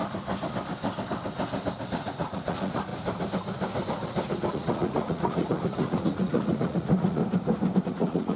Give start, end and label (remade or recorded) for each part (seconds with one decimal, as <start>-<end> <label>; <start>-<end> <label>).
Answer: 0.0-1.9 recorded; 1.9-2.9 remade; 2.9-4.5 recorded; 4.5-7.2 remade; 7.2-7.8 recorded; 7.8-8.4 remade

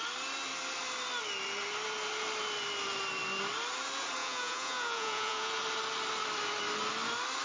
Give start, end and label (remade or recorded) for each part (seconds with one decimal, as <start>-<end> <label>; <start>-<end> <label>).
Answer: 0.0-4.2 recorded; 4.2-5.5 remade; 5.5-7.4 recorded

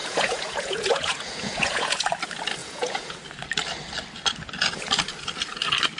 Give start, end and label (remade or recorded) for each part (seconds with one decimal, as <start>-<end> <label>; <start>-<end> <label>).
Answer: 0.0-2.1 remade; 2.1-2.6 recorded; 2.6-3.2 remade; 3.2-6.0 recorded

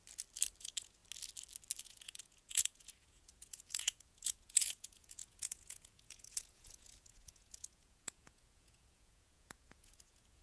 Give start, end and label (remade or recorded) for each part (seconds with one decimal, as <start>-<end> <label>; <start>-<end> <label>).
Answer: 0.0-0.6 recorded; 0.6-1.0 remade; 1.0-1.8 recorded; 1.8-10.4 remade